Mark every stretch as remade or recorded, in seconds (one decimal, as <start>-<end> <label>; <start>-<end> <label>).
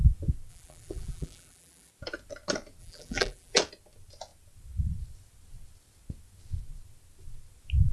0.0-0.5 recorded; 0.5-1.9 remade; 1.9-2.8 recorded; 2.8-3.6 remade; 3.6-7.9 recorded